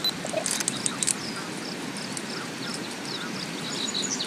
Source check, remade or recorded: recorded